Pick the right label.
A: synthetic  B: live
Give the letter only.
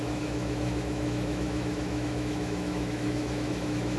A